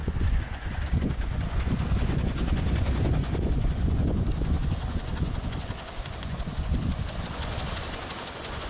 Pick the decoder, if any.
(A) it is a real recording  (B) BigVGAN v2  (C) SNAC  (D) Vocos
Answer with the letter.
D